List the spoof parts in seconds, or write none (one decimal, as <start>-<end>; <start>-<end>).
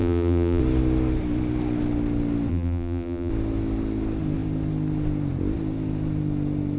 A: 0.0-0.6; 2.5-3.3